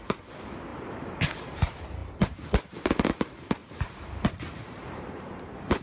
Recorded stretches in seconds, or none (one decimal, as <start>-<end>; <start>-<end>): 0.0-0.7; 1.4-3.6